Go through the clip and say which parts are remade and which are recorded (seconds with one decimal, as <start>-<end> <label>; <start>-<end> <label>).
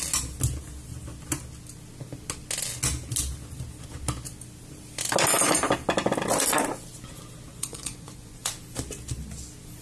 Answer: 0.0-7.5 recorded; 7.5-8.5 remade; 8.5-9.8 recorded